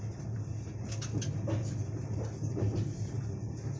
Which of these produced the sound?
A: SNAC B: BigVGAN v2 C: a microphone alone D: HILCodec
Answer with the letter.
C